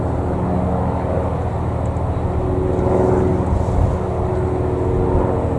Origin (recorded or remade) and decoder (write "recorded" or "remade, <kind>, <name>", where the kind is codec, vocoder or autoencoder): recorded